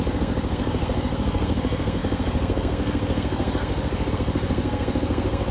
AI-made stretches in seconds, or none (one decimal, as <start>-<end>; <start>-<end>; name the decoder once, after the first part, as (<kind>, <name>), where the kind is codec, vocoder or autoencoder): 0.0-5.5 (codec, SNAC)